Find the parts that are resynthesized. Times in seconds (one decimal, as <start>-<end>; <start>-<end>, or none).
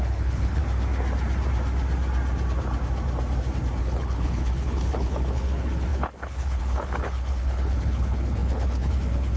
0.0-0.6; 3.8-9.4